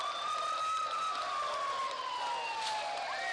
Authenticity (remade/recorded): recorded